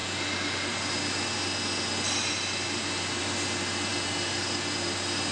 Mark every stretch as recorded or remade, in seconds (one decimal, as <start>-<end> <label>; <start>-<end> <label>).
0.0-5.3 recorded